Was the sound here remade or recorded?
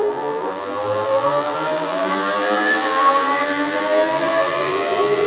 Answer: remade